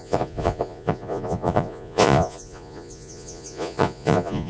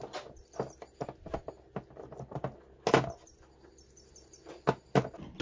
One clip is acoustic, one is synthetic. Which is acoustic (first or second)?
second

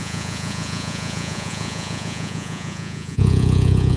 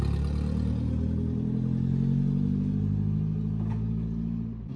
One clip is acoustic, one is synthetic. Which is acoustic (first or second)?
second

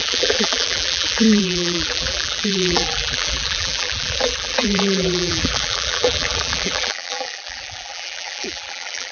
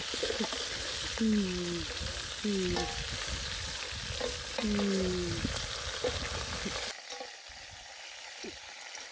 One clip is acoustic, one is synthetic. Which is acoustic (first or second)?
second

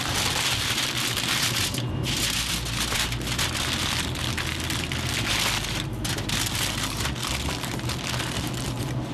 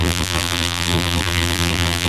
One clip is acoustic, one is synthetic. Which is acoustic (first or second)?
first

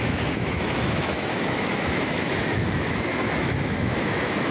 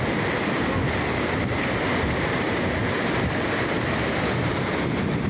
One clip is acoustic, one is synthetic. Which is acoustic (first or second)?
second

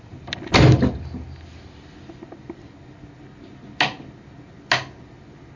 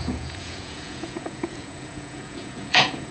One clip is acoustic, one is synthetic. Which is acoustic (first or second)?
first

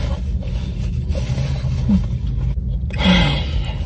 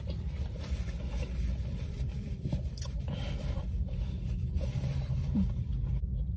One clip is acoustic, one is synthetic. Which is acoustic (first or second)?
first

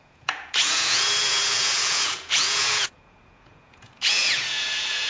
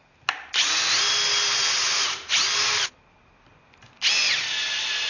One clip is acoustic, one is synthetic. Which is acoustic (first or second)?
second